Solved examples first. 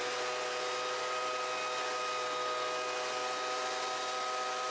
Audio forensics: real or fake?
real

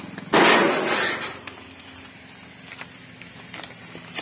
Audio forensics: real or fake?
real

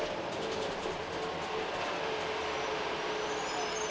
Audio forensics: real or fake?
real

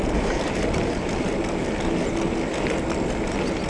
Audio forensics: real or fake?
real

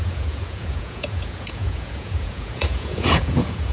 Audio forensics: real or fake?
fake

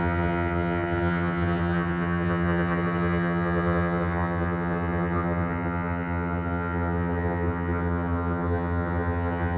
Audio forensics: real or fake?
fake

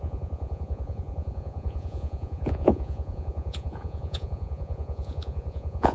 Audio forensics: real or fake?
fake